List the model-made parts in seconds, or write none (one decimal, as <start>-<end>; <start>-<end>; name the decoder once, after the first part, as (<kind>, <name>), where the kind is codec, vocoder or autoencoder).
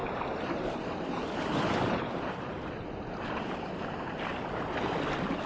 0.0-1.9 (vocoder, BigVGAN v2)